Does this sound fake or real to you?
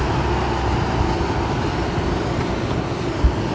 real